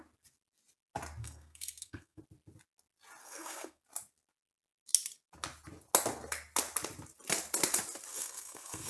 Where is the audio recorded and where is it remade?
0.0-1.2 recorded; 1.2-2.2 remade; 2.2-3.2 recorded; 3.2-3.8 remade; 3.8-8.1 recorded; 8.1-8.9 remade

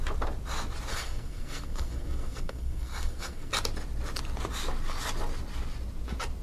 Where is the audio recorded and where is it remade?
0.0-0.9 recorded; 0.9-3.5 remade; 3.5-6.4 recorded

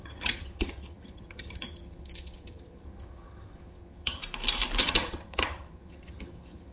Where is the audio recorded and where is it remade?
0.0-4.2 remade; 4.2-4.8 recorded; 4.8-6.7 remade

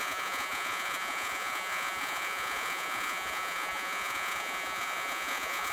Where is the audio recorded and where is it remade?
0.0-5.7 remade

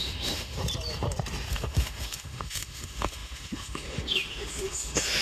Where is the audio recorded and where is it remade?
0.0-0.6 remade; 0.6-1.5 recorded; 1.5-5.2 remade

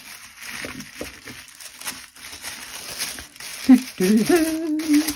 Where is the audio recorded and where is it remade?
0.0-5.2 recorded